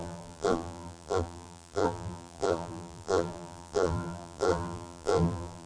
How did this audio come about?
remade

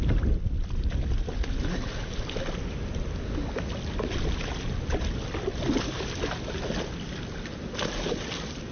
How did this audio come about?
recorded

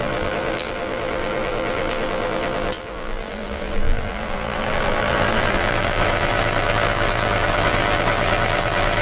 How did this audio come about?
remade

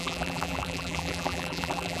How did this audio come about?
remade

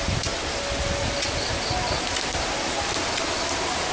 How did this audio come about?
recorded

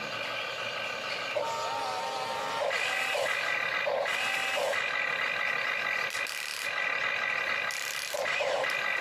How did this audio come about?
recorded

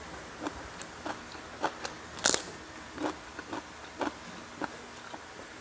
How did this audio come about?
recorded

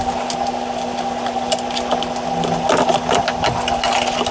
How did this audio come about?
recorded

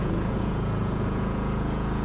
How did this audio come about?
remade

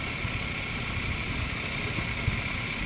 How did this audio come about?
recorded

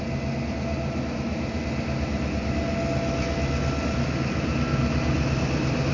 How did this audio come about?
recorded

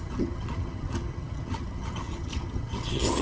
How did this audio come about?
remade